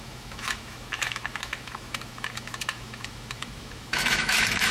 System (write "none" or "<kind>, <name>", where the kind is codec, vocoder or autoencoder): autoencoder, DAC-VAE